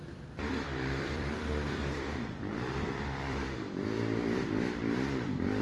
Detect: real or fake fake